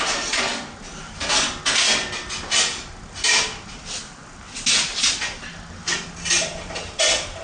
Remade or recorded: recorded